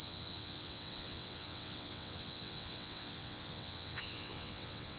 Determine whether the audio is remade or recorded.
remade